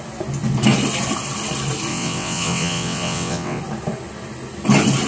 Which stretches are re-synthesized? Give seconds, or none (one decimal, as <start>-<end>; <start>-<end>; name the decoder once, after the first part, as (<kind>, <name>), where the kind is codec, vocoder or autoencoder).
1.9-3.6 (vocoder, WaveNeXt)